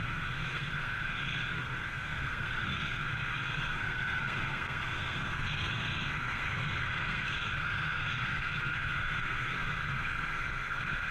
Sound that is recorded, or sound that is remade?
remade